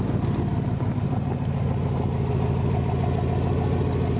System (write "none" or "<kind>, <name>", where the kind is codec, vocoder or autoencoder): none